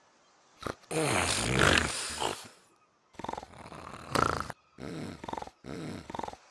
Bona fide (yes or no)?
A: yes